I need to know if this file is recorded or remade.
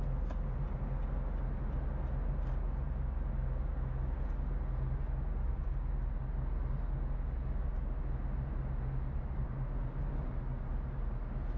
recorded